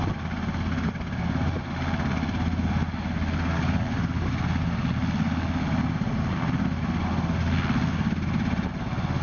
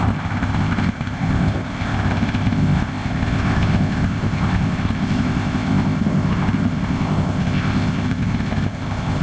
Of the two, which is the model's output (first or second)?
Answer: second